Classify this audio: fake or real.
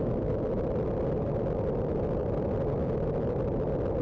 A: real